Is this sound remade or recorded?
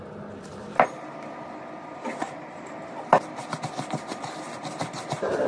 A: recorded